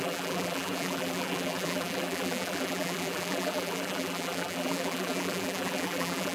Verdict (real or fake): fake